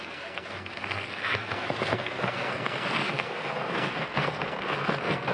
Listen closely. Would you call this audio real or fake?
fake